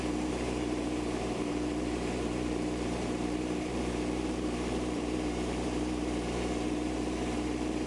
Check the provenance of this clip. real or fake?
fake